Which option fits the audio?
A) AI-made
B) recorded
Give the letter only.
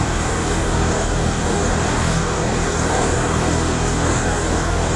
A